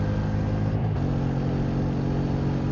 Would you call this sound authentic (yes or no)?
yes